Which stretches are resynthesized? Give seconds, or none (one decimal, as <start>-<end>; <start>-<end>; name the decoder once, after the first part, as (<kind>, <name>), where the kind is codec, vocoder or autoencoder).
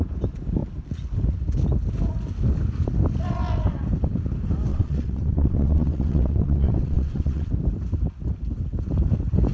4.7-7.5 (vocoder, WaveNeXt)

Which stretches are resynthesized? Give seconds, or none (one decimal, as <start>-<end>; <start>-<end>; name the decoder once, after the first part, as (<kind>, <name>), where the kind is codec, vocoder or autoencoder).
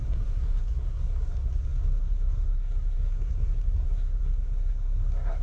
0.0-5.4 (codec, SNAC)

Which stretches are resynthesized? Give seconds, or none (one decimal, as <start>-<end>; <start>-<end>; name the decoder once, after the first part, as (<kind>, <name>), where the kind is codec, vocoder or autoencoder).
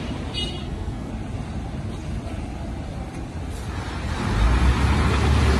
0.6-1.1 (codec, SNAC)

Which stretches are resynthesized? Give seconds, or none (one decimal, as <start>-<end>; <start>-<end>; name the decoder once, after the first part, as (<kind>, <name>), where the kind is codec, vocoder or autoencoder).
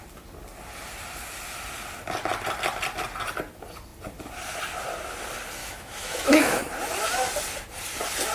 5.6-6.6 (autoencoder, DAC-VAE)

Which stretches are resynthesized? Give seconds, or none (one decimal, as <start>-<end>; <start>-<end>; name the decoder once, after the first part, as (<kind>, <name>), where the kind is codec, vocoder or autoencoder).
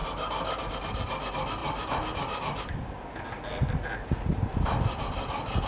none